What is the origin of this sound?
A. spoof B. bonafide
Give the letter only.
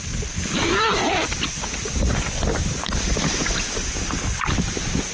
B